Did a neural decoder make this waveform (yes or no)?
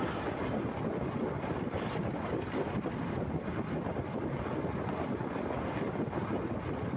no